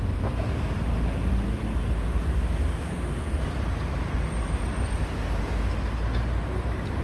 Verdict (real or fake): real